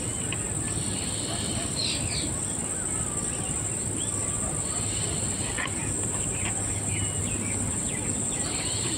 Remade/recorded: recorded